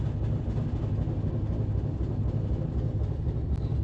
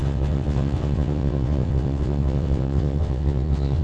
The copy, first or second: second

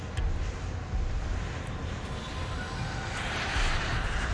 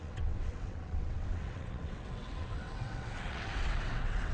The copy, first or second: second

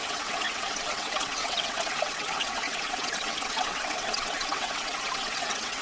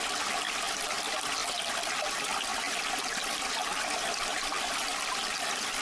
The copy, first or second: first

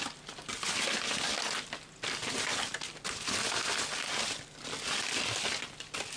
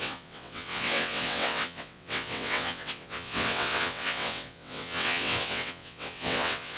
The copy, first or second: second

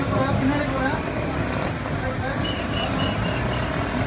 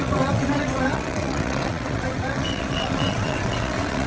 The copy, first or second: second